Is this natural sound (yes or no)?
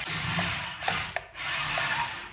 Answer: yes